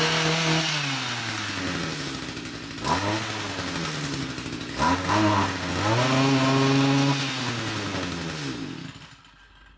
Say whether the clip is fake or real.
real